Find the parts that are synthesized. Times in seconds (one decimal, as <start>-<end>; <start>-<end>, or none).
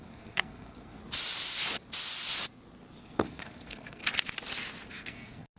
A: 0.0-1.0; 3.0-4.0; 4.9-5.6